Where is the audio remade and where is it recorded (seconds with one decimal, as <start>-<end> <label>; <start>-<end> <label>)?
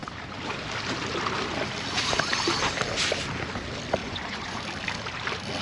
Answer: 0.0-4.0 recorded; 4.0-4.6 remade; 4.6-5.6 recorded